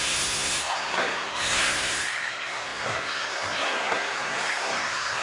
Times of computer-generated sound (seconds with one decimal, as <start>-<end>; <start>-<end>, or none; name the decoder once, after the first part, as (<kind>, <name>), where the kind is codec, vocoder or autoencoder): 0.0-5.2 (codec, SNAC)